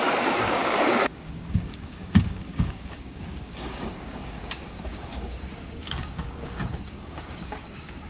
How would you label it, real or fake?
fake